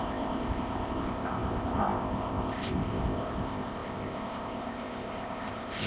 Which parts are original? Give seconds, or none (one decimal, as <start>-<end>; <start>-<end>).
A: none